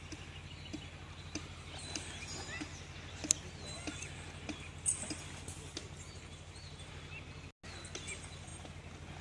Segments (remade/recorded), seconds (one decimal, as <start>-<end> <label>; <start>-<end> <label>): 0.0-5.8 recorded; 5.8-6.9 remade; 6.9-9.2 recorded